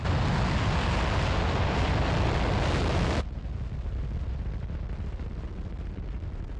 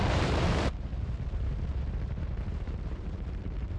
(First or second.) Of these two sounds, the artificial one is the second